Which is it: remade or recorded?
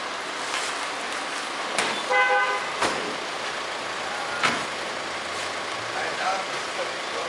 recorded